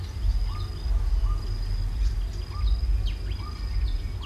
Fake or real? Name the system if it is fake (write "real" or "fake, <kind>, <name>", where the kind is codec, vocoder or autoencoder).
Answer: real